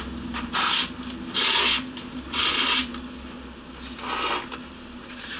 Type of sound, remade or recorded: recorded